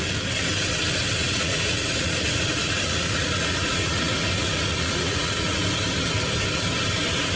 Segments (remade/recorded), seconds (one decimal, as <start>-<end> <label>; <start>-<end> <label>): 0.0-1.2 recorded; 1.2-5.6 remade; 5.6-7.4 recorded